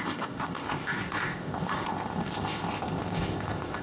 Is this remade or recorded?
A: remade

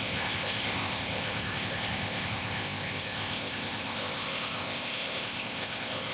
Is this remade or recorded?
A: remade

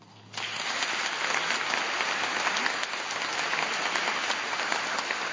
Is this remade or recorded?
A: recorded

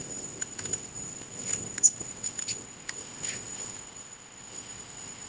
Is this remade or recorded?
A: remade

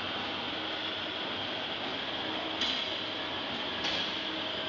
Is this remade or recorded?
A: recorded